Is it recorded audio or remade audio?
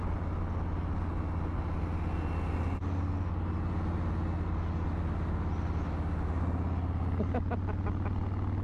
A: recorded